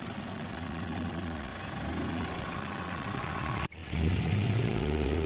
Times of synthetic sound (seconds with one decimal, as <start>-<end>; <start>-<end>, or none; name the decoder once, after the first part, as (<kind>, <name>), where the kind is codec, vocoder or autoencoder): 0.0-1.5 (vocoder, WaveNeXt); 2.1-5.3